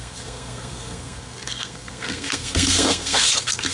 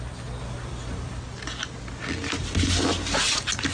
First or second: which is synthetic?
first